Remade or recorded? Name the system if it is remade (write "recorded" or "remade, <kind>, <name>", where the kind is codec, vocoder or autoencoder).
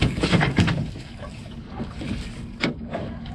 remade, codec, DAC